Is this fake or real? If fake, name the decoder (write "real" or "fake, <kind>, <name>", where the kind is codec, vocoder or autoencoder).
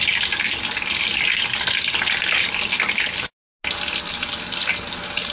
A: real